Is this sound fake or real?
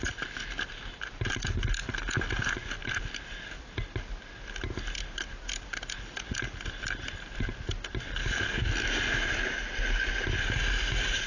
real